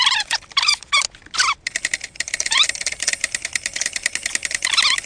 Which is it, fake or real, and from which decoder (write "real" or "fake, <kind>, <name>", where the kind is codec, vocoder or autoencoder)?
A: real